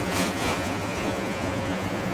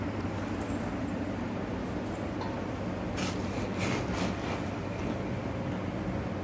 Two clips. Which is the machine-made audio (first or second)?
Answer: first